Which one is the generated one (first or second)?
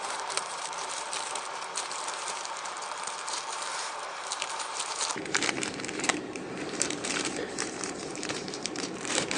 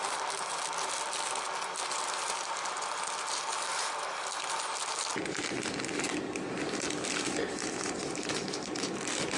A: first